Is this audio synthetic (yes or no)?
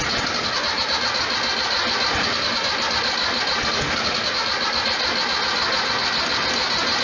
no